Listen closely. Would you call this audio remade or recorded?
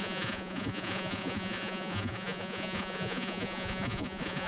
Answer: remade